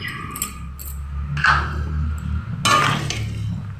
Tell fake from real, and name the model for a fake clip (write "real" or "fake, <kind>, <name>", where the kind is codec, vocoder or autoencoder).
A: real